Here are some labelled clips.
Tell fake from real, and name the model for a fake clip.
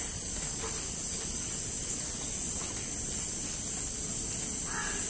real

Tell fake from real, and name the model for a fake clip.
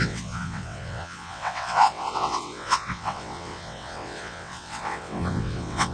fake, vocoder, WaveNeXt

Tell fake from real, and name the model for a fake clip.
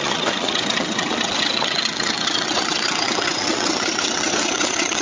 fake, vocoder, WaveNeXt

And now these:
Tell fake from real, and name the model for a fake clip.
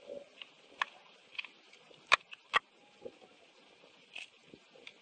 real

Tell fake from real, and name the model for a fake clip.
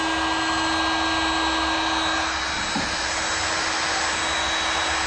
real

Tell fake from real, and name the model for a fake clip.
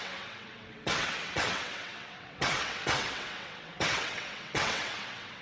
fake, vocoder, WaveNeXt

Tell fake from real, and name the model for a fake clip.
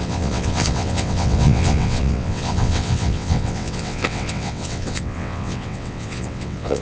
fake, vocoder, WaveNeXt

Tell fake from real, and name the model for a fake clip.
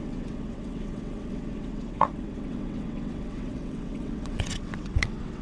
fake, vocoder, WaveNeXt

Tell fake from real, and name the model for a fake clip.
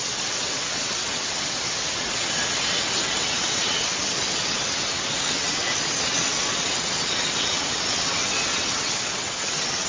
fake, vocoder, WaveNeXt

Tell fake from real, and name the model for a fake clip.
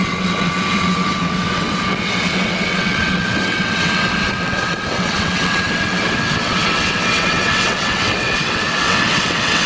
fake, vocoder, WaveNeXt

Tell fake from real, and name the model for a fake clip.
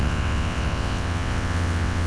fake, vocoder, WaveNeXt